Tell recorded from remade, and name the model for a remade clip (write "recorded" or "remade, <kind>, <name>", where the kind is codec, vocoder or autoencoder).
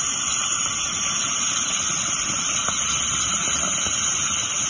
recorded